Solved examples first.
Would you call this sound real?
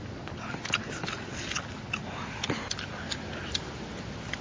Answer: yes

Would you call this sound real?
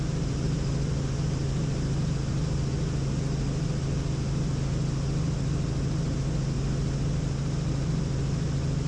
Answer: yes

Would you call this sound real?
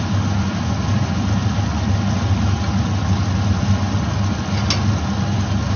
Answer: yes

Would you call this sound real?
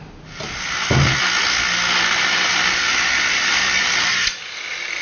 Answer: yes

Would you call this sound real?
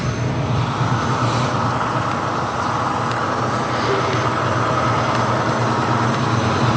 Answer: yes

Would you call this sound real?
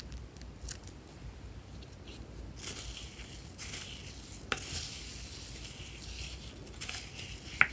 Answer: yes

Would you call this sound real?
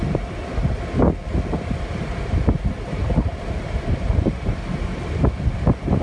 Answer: yes